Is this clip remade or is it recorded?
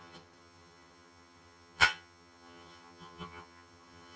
remade